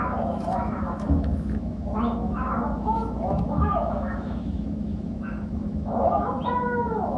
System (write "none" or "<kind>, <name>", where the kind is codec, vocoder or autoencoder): autoencoder, DAC-VAE